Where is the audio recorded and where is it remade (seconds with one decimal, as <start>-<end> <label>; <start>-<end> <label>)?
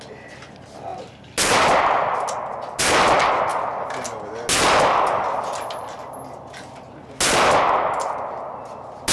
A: 0.0-9.1 recorded